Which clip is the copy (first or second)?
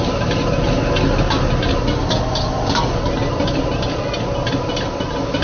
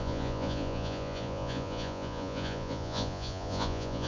second